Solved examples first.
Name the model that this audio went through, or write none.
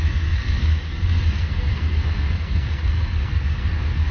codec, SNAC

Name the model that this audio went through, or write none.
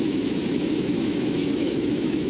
autoencoder, DAC-VAE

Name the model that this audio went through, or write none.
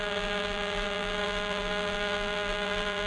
vocoder, BigVGAN v2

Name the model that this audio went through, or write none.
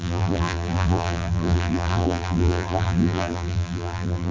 vocoder, BigVGAN v2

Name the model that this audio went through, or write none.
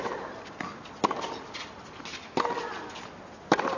none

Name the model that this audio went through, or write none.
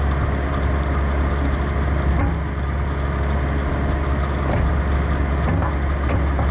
none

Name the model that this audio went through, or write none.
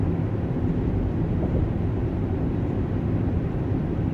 none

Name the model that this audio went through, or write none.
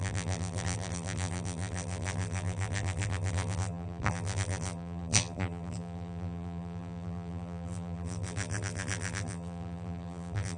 vocoder, BigVGAN v2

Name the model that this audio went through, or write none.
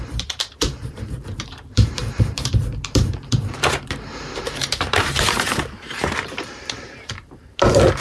vocoder, BigVGAN v2